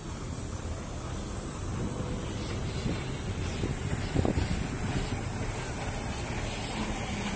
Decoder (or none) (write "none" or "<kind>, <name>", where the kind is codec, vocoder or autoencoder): none